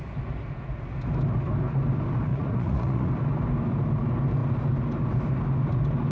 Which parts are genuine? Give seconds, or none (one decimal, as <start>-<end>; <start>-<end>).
0.0-2.3; 3.1-6.1